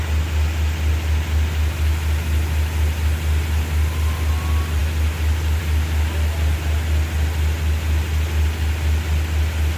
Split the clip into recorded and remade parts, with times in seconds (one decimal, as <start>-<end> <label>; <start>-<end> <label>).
0.0-9.8 recorded